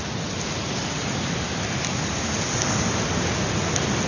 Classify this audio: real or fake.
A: real